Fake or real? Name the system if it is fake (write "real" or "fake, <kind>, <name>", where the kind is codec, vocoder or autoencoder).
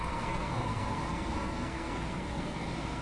fake, codec, SNAC